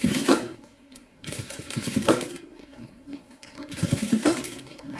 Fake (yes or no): yes